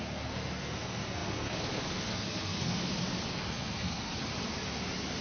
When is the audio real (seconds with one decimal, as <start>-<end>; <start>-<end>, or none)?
2.8-3.3; 4.1-5.2